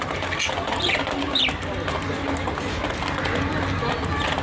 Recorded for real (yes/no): yes